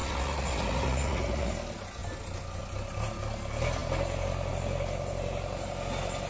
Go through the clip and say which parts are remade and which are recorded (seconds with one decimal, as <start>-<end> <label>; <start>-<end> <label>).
0.0-1.5 remade; 1.5-6.3 recorded